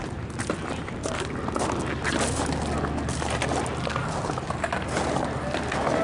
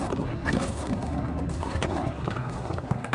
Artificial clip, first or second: second